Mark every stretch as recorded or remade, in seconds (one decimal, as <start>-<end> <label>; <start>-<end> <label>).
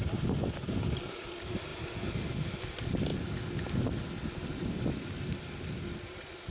0.0-6.5 recorded